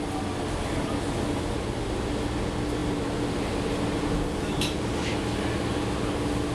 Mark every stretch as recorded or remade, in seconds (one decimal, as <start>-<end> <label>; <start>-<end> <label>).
0.0-6.5 recorded